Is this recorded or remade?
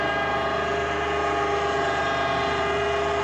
recorded